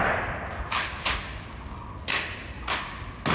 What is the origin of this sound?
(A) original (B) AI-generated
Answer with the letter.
A